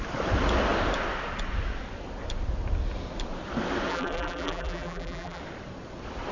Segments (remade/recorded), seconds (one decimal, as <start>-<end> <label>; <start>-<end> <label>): 0.0-3.9 recorded; 3.9-5.4 remade; 5.4-6.3 recorded